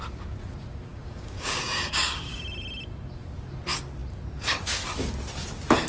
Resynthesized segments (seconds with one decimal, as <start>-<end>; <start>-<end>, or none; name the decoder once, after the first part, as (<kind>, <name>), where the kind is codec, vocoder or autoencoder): 0.9-2.4 (codec, DAC)